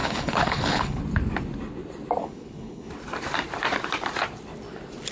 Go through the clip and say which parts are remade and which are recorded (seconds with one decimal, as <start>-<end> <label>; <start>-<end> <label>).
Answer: 0.0-1.0 remade; 1.0-2.2 recorded; 2.2-2.9 remade; 2.9-5.1 recorded